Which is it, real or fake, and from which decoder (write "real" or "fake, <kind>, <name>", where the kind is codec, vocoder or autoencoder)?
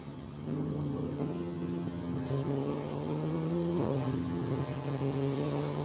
fake, vocoder, HiFi-GAN